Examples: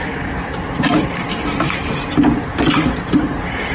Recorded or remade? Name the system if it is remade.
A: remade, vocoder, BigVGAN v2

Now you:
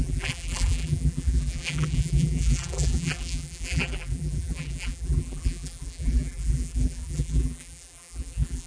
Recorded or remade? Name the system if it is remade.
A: remade, vocoder, BigVGAN v2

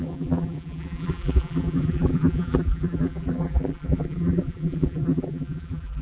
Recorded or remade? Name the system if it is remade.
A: remade, vocoder, BigVGAN v2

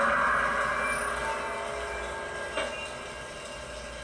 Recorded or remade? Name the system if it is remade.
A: recorded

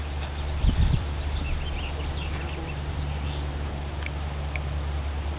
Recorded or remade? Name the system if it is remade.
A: remade, vocoder, BigVGAN v2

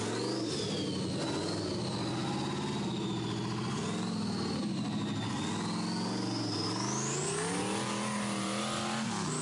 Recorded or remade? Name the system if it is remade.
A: recorded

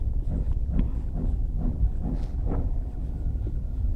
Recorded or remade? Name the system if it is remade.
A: remade, vocoder, BigVGAN v2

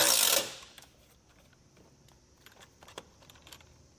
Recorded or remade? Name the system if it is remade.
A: remade, vocoder, BigVGAN v2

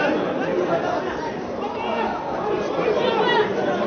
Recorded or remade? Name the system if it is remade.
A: recorded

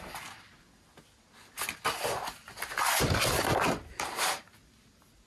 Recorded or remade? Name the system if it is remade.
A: recorded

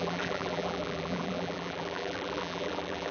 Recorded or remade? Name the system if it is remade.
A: remade, vocoder, BigVGAN v2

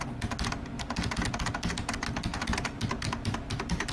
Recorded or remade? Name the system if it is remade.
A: recorded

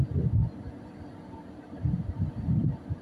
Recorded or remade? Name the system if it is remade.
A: remade, vocoder, BigVGAN v2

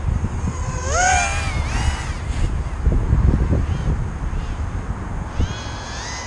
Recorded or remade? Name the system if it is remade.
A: recorded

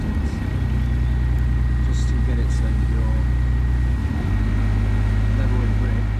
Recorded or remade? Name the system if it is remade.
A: recorded